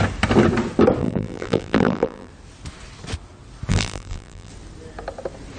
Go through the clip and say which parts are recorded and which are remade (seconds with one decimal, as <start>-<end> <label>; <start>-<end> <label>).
0.0-1.0 recorded; 1.0-2.3 remade; 2.3-3.7 recorded; 3.7-4.5 remade; 4.5-5.6 recorded

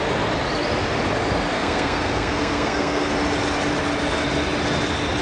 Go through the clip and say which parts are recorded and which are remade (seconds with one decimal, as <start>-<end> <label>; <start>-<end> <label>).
0.0-1.5 recorded; 1.5-3.1 remade; 3.1-5.2 recorded

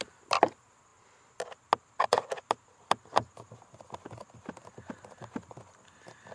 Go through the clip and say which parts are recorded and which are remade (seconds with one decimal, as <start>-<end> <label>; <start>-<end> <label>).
0.0-6.3 recorded

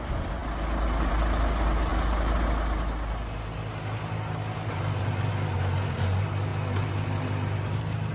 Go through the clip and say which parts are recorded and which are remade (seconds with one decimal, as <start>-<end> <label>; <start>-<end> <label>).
0.0-8.1 recorded

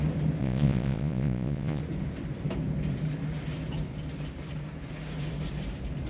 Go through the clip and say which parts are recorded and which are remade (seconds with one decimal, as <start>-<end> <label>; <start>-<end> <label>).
0.0-0.4 recorded; 0.4-1.8 remade; 1.8-6.1 recorded

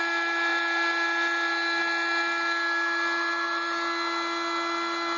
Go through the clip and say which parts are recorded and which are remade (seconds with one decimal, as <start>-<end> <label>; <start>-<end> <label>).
0.0-5.2 recorded

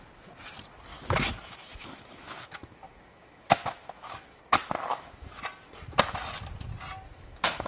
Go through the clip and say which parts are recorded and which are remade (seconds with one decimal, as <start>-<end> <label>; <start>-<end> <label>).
0.0-0.9 recorded; 0.9-4.4 remade; 4.4-4.9 recorded; 4.9-5.4 remade; 5.4-7.1 recorded; 7.1-7.7 remade

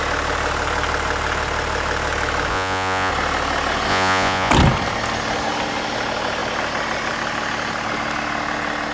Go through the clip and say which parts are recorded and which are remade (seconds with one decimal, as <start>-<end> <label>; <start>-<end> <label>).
0.0-2.5 recorded; 2.5-3.1 remade; 3.1-3.9 recorded; 3.9-4.5 remade; 4.5-8.9 recorded